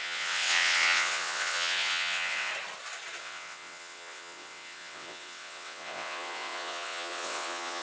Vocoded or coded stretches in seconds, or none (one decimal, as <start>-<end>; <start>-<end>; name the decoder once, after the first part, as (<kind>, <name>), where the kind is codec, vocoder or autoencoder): 0.0-2.5 (vocoder, WaveNeXt); 3.2-7.8